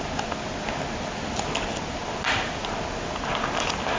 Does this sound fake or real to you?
real